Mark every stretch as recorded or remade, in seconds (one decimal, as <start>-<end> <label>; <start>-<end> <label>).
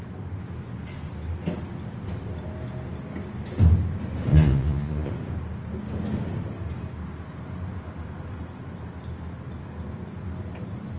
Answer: 0.0-4.3 recorded; 4.3-5.1 remade; 5.1-11.0 recorded